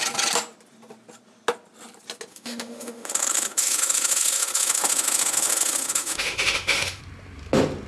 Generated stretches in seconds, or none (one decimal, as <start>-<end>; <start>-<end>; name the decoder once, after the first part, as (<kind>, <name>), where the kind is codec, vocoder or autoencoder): 2.3-7.0 (autoencoder, DAC-VAE)